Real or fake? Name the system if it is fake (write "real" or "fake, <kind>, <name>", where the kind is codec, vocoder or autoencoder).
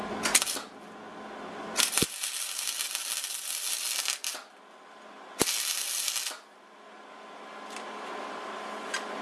real